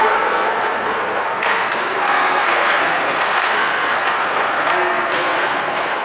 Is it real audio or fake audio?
fake